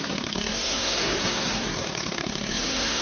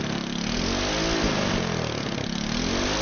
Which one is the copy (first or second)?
first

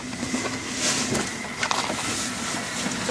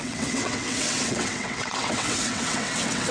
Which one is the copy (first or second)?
second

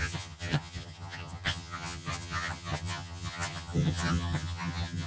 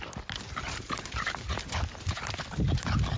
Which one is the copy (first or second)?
first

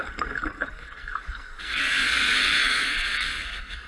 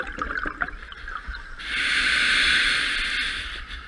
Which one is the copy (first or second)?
first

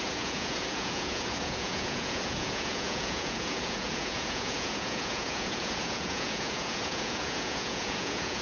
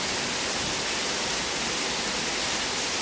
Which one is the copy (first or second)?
first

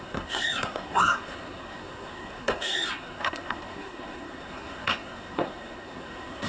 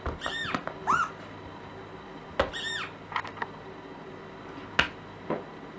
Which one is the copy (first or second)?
first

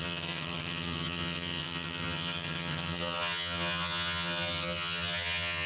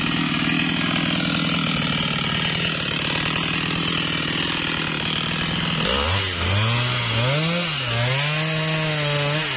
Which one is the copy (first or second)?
first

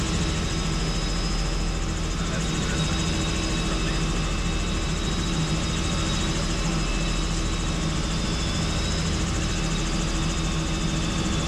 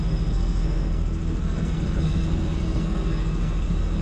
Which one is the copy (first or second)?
second